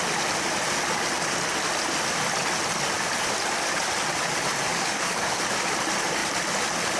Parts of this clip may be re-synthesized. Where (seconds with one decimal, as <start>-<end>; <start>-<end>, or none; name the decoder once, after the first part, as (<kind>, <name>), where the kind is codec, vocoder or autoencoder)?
4.7-5.4 (codec, DAC)